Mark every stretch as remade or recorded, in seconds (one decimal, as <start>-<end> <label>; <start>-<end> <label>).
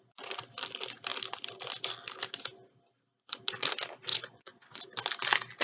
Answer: 0.0-4.1 recorded; 4.1-4.8 remade; 4.8-5.6 recorded